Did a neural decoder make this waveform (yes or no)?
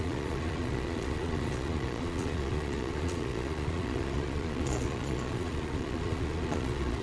yes